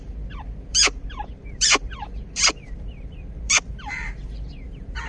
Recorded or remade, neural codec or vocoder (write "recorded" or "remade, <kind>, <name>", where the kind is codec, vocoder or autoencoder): remade, vocoder, BigVGAN v2